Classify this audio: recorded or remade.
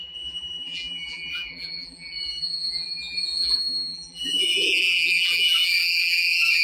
remade